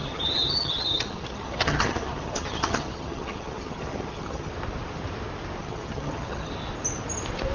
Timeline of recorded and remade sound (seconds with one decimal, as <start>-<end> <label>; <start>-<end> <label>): 0.0-4.5 remade; 4.5-5.6 recorded; 5.6-6.5 remade; 6.5-7.5 recorded